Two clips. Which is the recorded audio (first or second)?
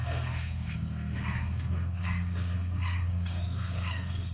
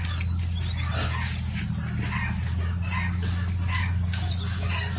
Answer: second